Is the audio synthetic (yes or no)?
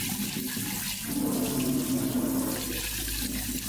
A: no